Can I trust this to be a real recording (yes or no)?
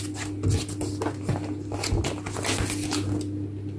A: yes